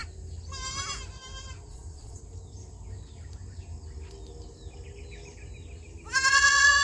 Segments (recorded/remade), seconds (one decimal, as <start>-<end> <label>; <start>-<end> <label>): 0.0-1.7 recorded; 1.7-2.2 remade; 2.2-6.3 recorded; 6.3-6.8 remade